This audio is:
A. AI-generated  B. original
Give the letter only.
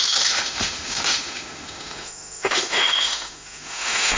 A